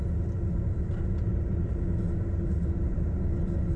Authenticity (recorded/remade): recorded